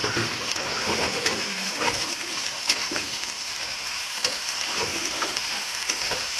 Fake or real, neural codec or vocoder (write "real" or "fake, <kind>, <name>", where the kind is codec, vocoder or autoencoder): fake, autoencoder, DAC-VAE